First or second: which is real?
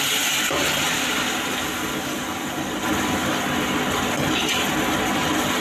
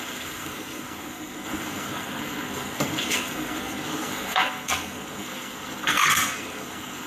first